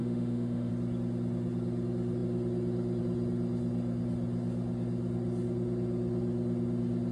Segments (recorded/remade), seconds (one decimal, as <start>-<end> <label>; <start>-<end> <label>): 0.0-0.7 remade; 0.7-7.1 recorded